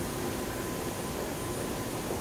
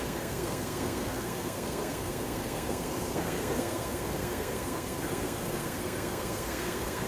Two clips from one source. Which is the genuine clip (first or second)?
first